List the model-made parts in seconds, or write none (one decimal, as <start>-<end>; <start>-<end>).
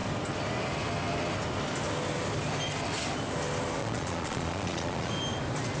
3.8-5.1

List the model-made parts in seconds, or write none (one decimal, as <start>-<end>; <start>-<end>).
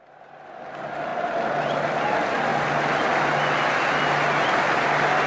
1.1-2.0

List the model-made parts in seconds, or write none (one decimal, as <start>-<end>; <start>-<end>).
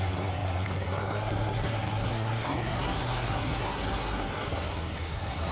0.0-5.5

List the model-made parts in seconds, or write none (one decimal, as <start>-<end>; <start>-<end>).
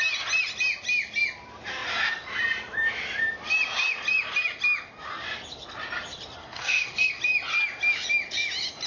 6.4-7.2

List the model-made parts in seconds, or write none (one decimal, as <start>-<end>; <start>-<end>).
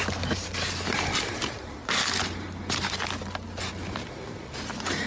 none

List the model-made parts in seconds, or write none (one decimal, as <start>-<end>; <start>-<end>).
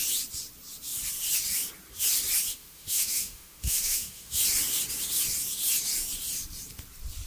2.5-4.4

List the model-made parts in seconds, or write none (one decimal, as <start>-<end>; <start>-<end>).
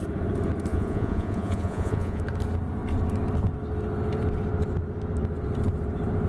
0.7-2.2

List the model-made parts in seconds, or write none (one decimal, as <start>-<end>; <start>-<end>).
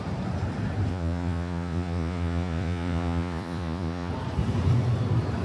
0.9-4.1